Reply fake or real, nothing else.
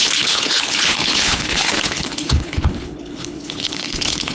fake